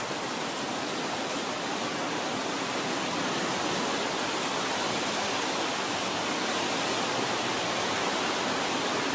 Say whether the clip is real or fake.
real